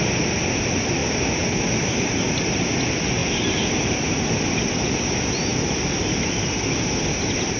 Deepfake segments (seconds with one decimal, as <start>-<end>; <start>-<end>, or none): none